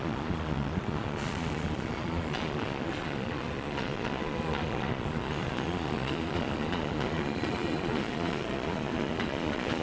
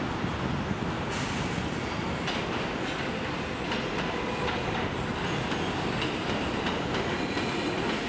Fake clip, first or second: first